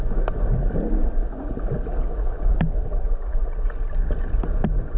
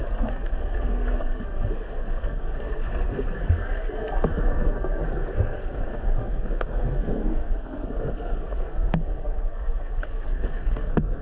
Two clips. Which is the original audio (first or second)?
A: first